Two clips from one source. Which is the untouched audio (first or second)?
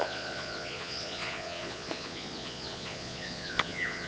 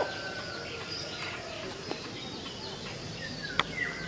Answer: second